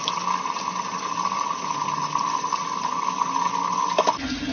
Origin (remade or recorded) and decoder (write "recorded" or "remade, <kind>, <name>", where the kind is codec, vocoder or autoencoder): recorded